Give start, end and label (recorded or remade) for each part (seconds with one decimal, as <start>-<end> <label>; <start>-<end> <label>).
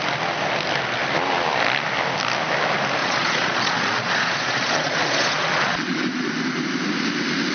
0.0-3.0 recorded; 3.0-6.3 remade; 6.3-7.5 recorded